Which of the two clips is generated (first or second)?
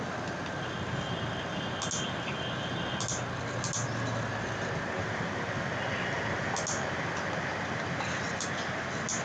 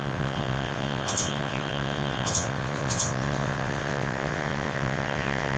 second